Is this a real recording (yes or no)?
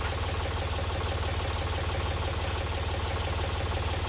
yes